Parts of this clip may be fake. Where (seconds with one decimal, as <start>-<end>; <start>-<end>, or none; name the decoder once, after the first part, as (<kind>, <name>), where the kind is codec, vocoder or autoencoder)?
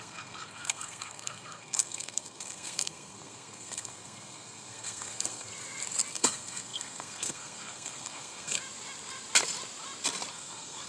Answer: 0.0-5.5 (codec, SNAC); 6.1-8.6; 10.3-10.9